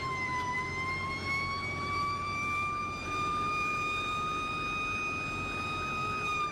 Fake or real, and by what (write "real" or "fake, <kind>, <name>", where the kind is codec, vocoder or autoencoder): fake, vocoder, BigVGAN v2